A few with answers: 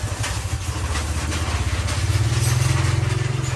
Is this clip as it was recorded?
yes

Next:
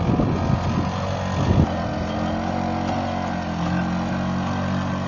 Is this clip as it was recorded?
yes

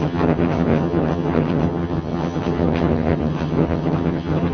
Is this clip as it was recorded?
no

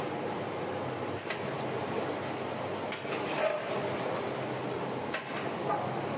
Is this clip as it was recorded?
yes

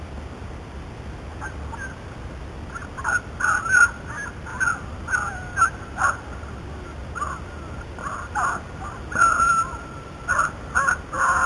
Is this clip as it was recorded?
yes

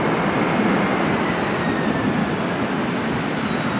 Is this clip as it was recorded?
yes